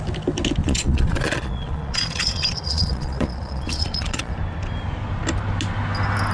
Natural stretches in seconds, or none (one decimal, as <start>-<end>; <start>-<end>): 0.0-0.6; 4.3-6.3